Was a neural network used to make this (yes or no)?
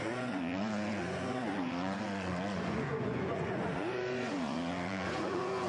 yes